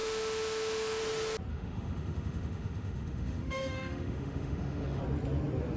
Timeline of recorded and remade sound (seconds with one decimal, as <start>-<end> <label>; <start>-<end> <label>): 0.0-1.0 remade; 1.0-1.5 recorded; 1.5-5.0 remade; 5.0-5.8 recorded